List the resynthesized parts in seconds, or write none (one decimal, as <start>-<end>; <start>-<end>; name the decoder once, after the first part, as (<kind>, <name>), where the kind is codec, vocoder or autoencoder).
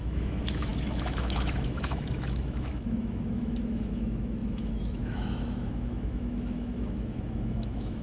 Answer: 0.0-8.0 (autoencoder, DAC-VAE)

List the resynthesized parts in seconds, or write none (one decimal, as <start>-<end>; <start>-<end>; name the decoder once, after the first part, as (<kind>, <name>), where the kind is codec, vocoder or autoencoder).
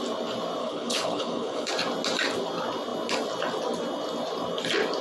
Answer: 0.6-1.7 (codec, HILCodec)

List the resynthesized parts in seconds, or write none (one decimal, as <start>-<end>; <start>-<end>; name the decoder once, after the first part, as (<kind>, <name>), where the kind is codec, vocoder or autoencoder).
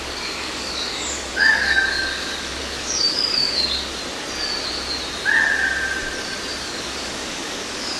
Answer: 0.0-4.0 (codec, DAC); 6.6-8.0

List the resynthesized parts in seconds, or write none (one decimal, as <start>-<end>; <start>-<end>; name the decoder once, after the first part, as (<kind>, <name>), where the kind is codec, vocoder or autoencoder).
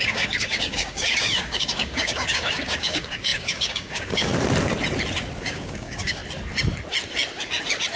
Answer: 0.0-4.3 (codec, DAC); 5.4-6.2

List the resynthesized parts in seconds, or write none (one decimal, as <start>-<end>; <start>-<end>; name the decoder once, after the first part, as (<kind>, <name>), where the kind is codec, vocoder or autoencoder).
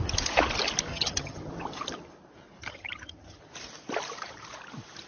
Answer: 0.9-1.5 (vocoder, HiFi-GAN); 2.6-3.4